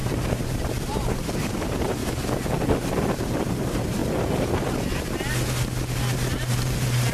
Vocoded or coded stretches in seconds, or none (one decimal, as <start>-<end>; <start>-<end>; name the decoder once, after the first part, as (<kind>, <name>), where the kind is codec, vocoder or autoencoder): 0.0-2.0 (vocoder, BigVGAN v2); 2.9-4.0; 6.5-7.1